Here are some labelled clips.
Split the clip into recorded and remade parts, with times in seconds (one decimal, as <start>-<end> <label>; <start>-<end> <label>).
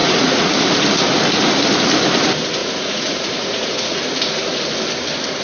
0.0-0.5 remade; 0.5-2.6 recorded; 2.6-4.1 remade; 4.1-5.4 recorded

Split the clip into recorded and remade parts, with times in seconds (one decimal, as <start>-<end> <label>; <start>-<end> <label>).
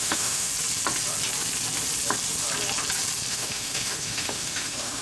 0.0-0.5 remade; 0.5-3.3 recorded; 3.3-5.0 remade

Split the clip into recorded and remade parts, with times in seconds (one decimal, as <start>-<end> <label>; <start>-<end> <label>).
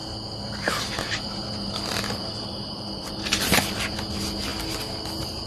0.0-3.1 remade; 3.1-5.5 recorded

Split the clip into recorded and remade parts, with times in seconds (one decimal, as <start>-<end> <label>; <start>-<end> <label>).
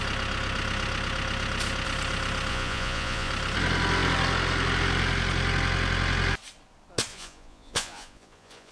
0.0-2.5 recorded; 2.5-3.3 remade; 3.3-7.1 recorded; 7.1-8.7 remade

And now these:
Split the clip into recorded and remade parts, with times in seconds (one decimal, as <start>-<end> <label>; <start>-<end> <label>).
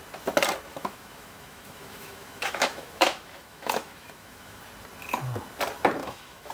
0.0-0.7 recorded; 0.7-4.6 remade; 4.6-6.0 recorded; 6.0-6.5 remade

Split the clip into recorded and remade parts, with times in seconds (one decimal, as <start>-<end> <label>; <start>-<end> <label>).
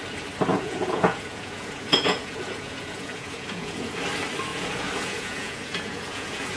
0.0-0.5 recorded; 0.5-3.9 remade; 3.9-4.5 recorded; 4.5-6.6 remade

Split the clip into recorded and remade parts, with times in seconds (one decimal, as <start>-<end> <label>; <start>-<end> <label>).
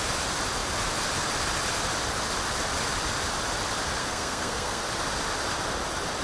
0.0-4.0 recorded; 4.0-4.8 remade; 4.8-6.2 recorded